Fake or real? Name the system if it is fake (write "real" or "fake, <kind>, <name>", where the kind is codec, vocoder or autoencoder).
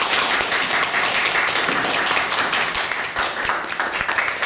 real